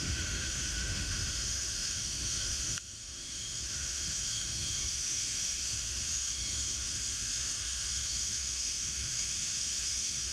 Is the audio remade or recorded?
remade